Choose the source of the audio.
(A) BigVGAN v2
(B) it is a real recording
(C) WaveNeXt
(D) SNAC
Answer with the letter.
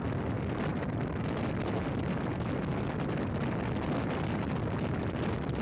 B